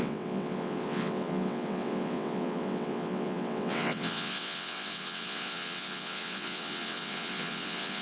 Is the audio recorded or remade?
remade